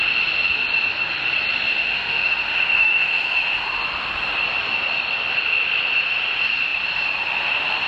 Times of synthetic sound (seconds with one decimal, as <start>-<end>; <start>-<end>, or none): 1.7-3.2